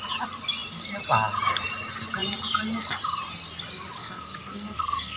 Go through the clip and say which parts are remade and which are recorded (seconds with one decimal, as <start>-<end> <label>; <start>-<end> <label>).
0.0-4.0 recorded; 4.0-5.2 remade